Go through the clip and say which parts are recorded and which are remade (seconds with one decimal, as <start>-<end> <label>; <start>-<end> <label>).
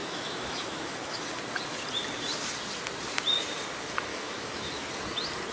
0.0-1.2 remade; 1.2-4.1 recorded; 4.1-4.9 remade; 4.9-5.5 recorded